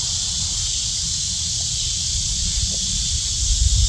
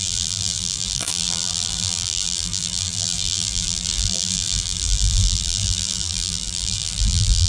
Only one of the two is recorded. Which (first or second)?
first